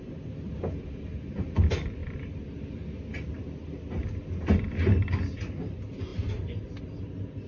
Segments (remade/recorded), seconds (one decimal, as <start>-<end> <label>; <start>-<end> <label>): 0.0-7.5 recorded